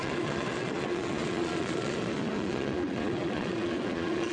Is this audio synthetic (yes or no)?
yes